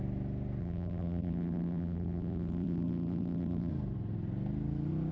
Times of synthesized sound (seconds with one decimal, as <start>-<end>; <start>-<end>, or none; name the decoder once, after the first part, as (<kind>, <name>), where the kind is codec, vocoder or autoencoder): 0.6-3.7 (vocoder, BigVGAN v2)